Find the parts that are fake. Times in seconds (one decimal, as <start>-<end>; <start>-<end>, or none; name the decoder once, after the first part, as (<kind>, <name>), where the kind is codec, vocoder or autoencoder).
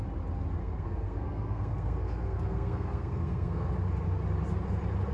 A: 0.6-3.7 (codec, SNAC)